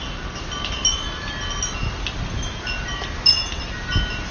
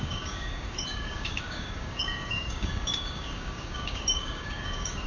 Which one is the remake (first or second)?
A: second